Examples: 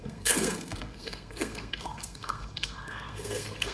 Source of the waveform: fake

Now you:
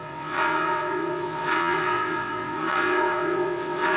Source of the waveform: fake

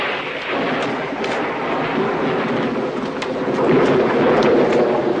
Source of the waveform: real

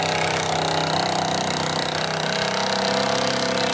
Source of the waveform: real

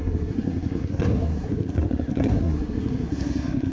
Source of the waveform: fake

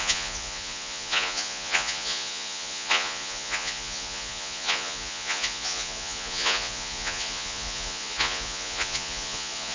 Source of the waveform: fake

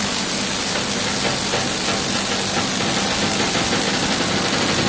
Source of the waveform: real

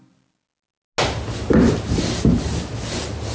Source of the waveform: real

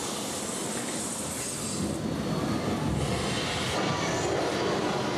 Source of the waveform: real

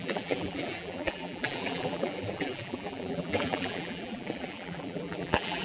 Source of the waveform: fake